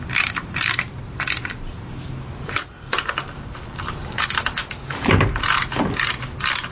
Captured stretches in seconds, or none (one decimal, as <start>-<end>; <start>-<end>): 2.6-3.9

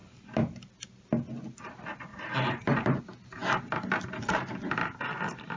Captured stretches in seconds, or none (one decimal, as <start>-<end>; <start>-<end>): 0.7-2.1; 3.0-5.6

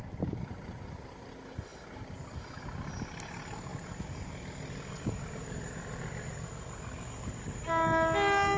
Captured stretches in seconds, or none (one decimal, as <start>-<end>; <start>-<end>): 0.0-8.6